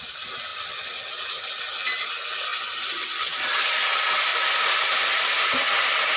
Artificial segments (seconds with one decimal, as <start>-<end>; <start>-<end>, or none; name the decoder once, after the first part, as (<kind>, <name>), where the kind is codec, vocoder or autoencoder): 0.5-1.6 (vocoder, BigVGAN v2); 4.3-5.0